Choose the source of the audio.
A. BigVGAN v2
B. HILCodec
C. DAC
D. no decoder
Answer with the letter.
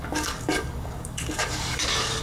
C